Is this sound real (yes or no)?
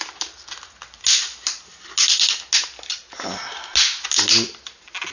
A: yes